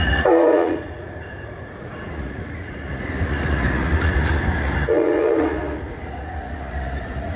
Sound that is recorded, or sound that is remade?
remade